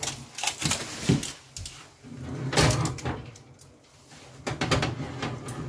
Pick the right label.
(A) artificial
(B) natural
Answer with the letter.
B